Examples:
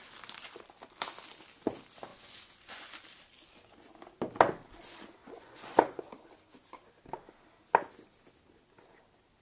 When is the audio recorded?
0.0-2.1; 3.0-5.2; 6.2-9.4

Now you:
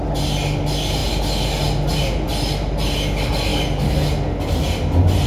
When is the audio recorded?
0.0-5.3

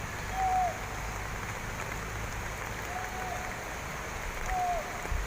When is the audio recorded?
0.0-5.3

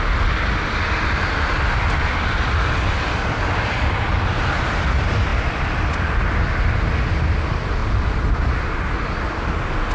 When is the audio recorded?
0.0-9.9

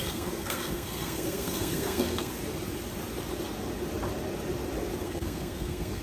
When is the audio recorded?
2.3-5.0

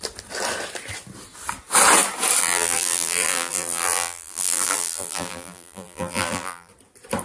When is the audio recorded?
0.0-2.4; 6.7-7.2

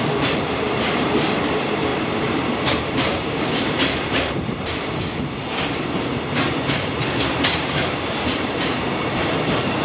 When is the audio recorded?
6.1-7.2

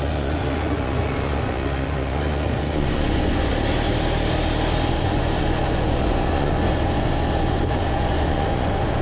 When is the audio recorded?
3.5-4.9